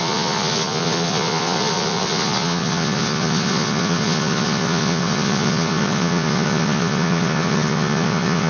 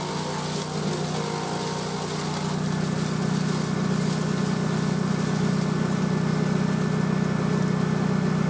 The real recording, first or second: second